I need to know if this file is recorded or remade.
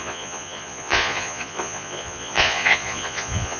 remade